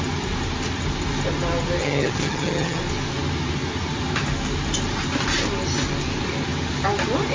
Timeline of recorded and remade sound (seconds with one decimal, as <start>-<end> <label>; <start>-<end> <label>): 0.0-1.8 recorded; 1.8-2.8 remade; 2.8-7.3 recorded